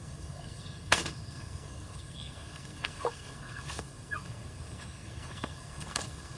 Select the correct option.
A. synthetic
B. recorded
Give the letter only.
A